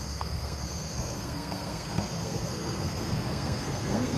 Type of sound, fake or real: fake